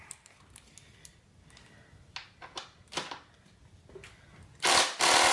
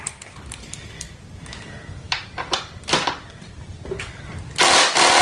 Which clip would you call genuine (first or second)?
first